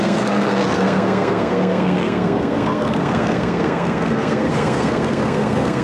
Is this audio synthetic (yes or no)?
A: yes